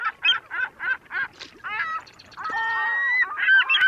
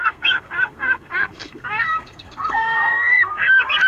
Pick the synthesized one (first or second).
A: second